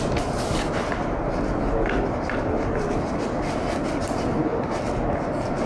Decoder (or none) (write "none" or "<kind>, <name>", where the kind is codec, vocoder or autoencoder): none